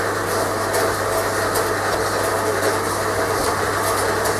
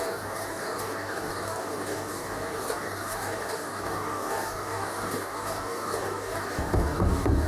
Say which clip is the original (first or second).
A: first